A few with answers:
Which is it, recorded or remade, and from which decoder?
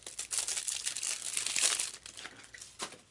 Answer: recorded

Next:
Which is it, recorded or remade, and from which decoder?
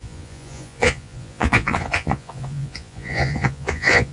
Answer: remade, vocoder, Vocos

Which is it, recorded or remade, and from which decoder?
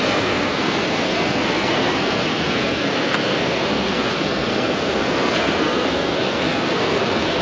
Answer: remade, codec, SNAC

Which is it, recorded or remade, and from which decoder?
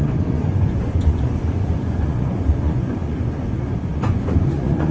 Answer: remade, vocoder, Vocos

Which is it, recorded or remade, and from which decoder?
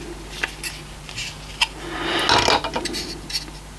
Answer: recorded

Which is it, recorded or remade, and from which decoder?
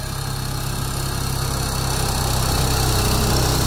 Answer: recorded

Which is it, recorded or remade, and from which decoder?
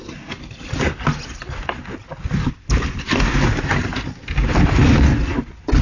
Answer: recorded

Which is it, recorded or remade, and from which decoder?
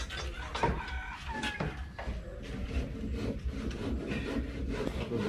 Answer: recorded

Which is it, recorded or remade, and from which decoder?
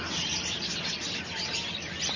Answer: recorded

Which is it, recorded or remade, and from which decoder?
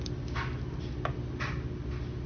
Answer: recorded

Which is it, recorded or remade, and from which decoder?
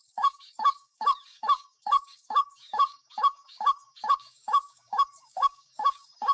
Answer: remade, codec, DAC